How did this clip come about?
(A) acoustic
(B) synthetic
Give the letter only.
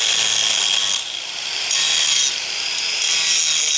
A